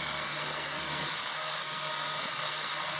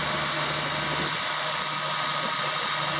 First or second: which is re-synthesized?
first